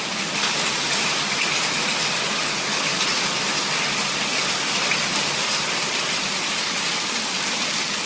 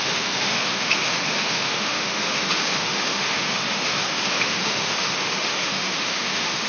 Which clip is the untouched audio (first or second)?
first